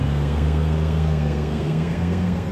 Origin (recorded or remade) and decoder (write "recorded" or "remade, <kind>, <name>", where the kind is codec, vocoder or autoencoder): remade, codec, SNAC